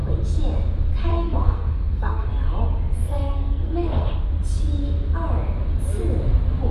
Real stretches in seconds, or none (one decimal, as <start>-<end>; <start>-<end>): 0.0-1.1; 2.3-2.9; 4.1-6.7

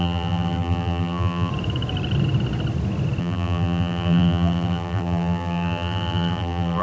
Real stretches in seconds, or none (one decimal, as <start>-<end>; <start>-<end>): 1.5-3.2